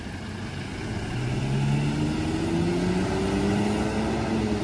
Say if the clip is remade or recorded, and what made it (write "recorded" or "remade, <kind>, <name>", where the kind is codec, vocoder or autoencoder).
recorded